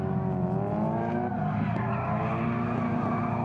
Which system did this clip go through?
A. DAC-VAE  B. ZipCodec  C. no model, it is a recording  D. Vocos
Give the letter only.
C